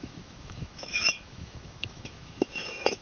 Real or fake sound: fake